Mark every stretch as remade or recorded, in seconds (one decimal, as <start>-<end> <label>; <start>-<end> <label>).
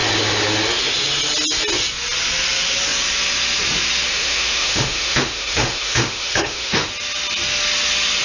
0.0-4.1 recorded; 4.1-6.9 remade; 6.9-8.2 recorded